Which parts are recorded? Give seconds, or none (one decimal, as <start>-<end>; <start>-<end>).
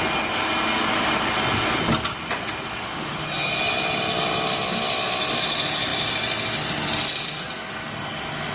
0.0-8.5